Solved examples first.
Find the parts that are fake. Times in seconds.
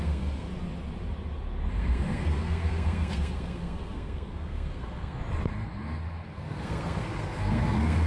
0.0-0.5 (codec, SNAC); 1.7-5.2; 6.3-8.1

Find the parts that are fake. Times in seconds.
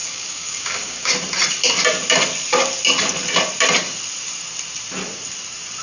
0.0-1.1 (codec, DAC)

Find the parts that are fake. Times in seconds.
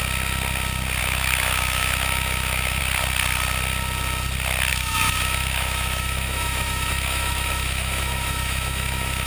1.0-2.8 (autoencoder, DAC-VAE); 4.7-9.3